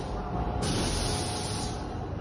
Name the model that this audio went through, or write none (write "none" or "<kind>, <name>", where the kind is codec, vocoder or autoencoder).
vocoder, BigVGAN v2